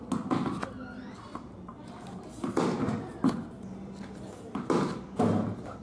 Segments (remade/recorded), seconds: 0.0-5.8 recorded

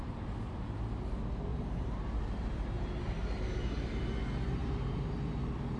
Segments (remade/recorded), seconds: 0.0-1.5 recorded; 1.5-3.9 remade; 3.9-5.8 recorded

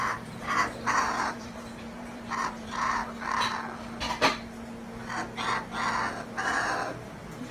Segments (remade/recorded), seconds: 0.0-3.0 remade; 3.0-7.5 recorded